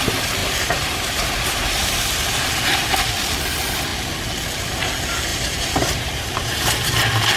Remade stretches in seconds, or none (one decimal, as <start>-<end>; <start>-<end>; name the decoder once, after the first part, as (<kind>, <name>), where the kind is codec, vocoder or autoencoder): 0.4-1.7 (vocoder, BigVGAN v2); 5.3-6.9